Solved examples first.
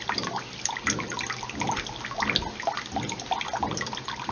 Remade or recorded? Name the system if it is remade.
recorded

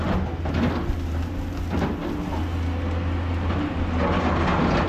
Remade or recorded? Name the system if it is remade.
recorded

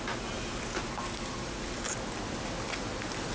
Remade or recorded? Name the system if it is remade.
recorded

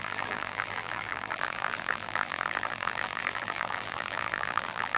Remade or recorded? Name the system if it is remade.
remade, vocoder, BigVGAN v2